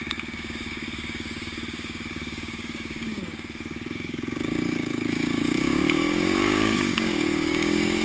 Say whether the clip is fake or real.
fake